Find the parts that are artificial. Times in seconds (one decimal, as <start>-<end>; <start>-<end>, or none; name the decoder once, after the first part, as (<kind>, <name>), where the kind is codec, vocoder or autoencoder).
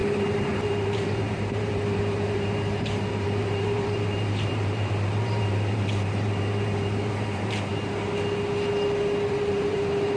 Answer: 0.0-7.7 (vocoder, BigVGAN v2); 9.3-10.2